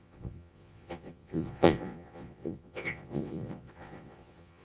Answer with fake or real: fake